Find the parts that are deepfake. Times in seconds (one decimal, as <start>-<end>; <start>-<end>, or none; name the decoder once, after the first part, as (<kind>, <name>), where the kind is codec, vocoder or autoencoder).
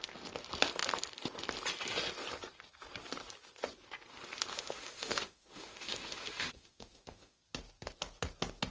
4.5-7.4 (autoencoder, DAC-VAE)